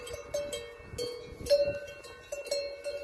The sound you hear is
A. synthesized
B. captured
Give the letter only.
B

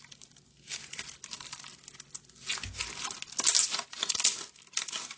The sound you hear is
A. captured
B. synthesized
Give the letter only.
A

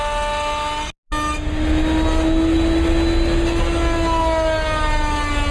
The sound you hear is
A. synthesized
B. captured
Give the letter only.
B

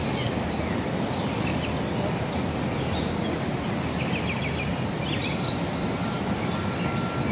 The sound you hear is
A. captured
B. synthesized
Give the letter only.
A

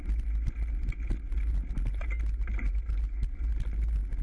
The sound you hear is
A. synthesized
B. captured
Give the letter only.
B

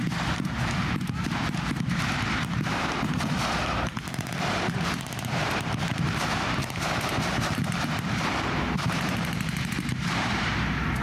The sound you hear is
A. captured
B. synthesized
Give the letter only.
B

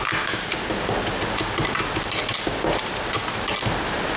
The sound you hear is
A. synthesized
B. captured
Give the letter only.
B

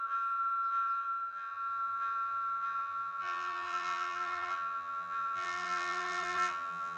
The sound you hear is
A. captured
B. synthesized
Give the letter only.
B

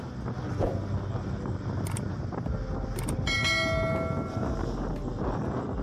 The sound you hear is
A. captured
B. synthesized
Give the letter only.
A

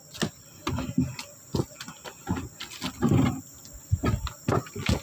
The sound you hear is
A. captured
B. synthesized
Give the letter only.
A